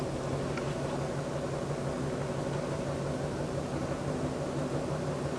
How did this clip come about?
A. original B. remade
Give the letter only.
A